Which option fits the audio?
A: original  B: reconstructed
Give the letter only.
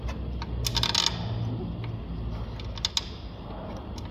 A